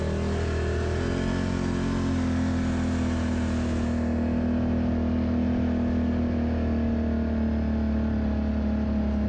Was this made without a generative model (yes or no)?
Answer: yes